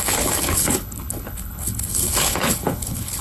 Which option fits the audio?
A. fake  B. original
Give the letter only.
A